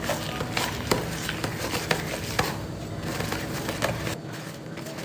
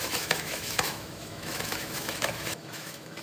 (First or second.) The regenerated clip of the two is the second